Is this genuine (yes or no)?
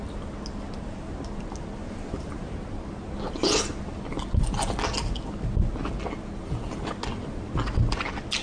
yes